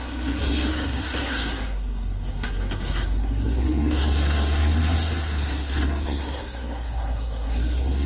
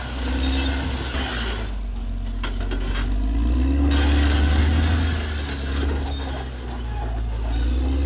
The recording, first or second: second